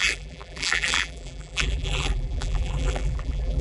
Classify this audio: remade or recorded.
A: remade